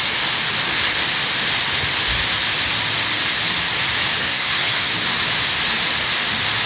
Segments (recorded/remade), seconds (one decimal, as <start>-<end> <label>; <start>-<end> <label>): 0.0-4.2 recorded; 4.2-4.9 remade; 4.9-6.7 recorded